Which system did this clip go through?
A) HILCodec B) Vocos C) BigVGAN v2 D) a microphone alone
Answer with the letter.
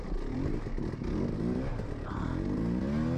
D